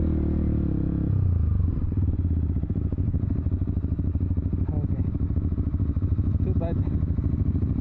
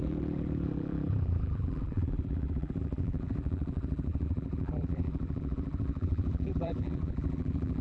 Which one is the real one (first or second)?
first